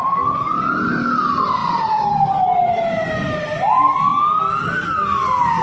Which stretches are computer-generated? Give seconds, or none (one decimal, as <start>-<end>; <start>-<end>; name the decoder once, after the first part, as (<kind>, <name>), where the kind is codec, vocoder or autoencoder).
none